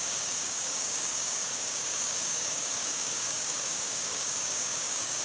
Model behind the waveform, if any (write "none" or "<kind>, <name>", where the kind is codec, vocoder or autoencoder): codec, DAC